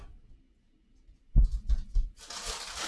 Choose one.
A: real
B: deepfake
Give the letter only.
A